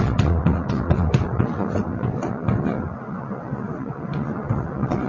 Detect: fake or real fake